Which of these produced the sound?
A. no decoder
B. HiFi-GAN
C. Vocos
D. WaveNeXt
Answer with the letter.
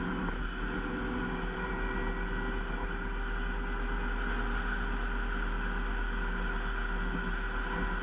A